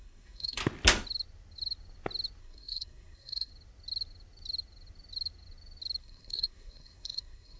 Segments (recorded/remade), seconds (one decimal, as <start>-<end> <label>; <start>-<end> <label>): 0.0-0.6 remade; 0.6-2.4 recorded; 2.4-3.5 remade; 3.5-6.0 recorded; 6.0-7.6 remade